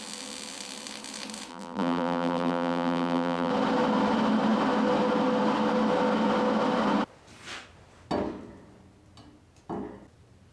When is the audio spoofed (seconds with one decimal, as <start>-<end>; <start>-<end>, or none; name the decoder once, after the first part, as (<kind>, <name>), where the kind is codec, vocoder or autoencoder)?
1.5-3.5 (vocoder, BigVGAN v2)